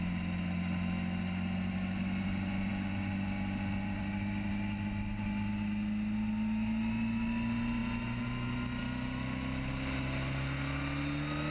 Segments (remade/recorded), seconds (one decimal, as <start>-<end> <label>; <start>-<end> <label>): 0.0-11.5 recorded